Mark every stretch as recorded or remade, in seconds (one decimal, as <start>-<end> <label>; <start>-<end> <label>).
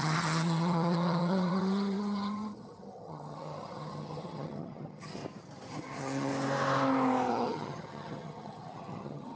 0.0-5.2 remade; 5.2-5.7 recorded; 5.7-6.3 remade; 6.3-7.3 recorded; 7.3-9.4 remade